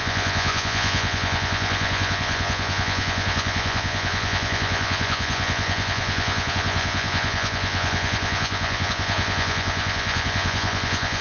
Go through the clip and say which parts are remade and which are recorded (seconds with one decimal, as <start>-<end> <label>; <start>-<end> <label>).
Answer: 0.0-11.2 remade